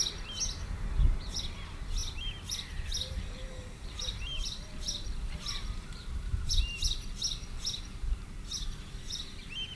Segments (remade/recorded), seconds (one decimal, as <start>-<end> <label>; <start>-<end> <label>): 0.0-2.0 recorded; 2.0-6.5 remade; 6.5-9.8 recorded